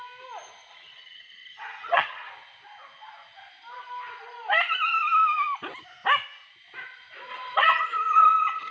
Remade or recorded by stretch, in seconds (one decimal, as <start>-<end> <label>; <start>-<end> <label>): 0.0-0.7 recorded; 0.7-2.3 remade; 2.3-7.3 recorded; 7.3-8.7 remade